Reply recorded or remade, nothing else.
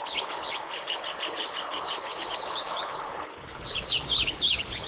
remade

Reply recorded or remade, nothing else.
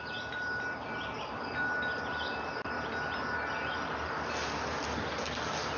recorded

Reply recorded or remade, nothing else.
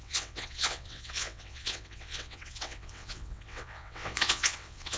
remade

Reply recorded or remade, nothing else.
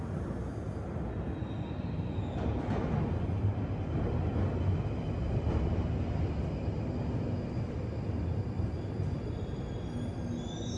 recorded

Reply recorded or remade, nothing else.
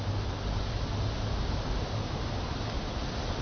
recorded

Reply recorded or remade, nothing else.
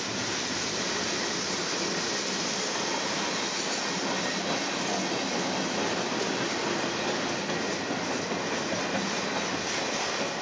recorded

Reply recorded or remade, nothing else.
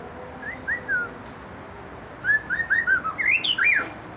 recorded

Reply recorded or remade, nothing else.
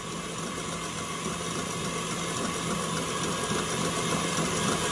recorded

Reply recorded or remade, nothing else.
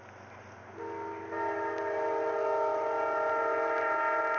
recorded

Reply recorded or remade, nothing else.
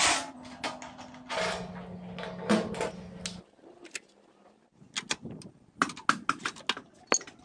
recorded